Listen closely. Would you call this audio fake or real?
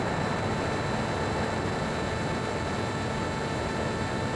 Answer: real